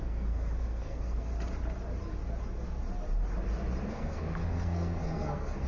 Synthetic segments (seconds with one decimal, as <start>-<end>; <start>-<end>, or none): 0.0-1.3; 3.9-5.7